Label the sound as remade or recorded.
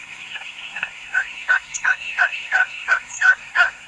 remade